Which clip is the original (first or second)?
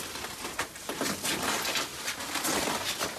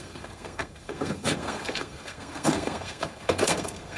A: first